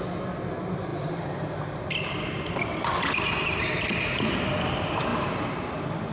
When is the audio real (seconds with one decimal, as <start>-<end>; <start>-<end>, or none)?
0.0-5.1